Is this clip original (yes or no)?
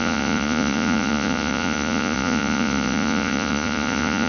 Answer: no